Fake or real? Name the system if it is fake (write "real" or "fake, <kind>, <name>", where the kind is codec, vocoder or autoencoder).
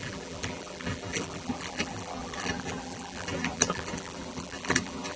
fake, vocoder, BigVGAN v2